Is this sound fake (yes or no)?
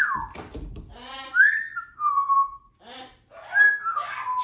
no